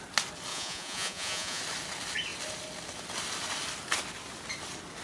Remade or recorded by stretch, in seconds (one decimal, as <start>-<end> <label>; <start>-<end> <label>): 0.0-0.5 recorded; 0.5-1.6 remade; 1.6-5.0 recorded